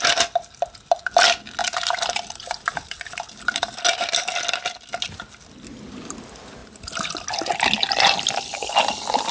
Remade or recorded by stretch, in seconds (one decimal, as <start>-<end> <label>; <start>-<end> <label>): 0.0-1.6 recorded; 1.6-4.0 remade; 4.0-6.6 recorded; 6.6-7.1 remade; 7.1-9.3 recorded